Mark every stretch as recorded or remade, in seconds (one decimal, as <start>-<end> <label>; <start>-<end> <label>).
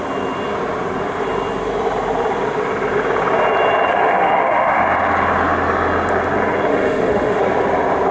0.0-3.9 recorded; 3.9-4.8 remade; 4.8-6.7 recorded; 6.7-7.4 remade; 7.4-8.1 recorded